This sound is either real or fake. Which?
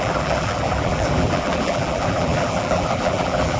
fake